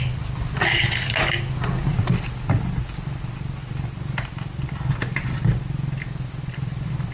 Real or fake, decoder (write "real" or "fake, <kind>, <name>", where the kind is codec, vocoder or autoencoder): real